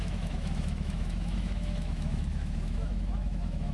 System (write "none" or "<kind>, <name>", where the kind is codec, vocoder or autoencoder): autoencoder, DAC-VAE